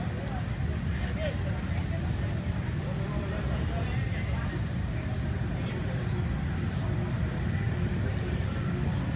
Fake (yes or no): no